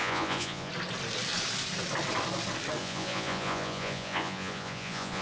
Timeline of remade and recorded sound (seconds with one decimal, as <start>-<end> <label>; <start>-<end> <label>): 0.0-0.7 remade; 0.7-2.8 recorded; 2.8-5.2 remade